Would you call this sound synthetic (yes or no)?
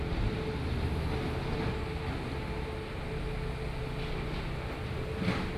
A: no